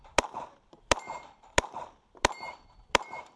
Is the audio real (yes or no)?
no